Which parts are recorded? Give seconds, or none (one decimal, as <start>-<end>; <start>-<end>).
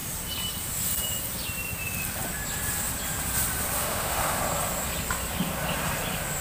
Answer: 0.0-3.8; 4.4-6.4